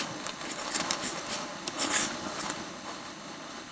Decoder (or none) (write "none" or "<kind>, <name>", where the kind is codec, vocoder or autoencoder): codec, HILCodec